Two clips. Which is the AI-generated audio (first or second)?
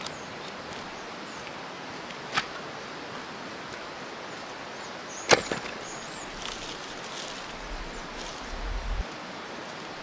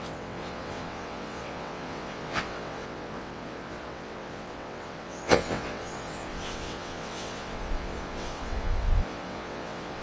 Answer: second